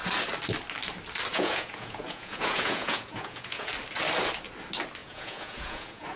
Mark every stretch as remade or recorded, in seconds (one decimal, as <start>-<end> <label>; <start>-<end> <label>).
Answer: 0.0-1.3 recorded; 1.3-3.7 remade; 3.7-5.0 recorded; 5.0-6.2 remade